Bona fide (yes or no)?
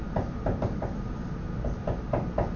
yes